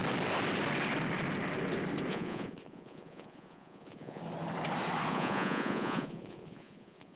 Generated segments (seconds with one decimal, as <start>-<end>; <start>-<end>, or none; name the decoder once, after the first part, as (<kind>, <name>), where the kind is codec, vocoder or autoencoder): 2.1-4.2 (vocoder, Vocos); 5.1-7.2